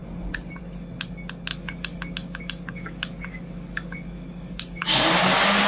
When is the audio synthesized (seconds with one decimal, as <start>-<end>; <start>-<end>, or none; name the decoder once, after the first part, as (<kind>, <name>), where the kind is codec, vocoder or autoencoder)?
1.5-4.9 (codec, DAC)